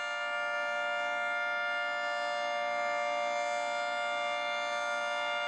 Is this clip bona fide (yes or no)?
yes